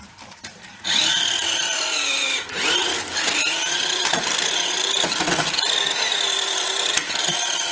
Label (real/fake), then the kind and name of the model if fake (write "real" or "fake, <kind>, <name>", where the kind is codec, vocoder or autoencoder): real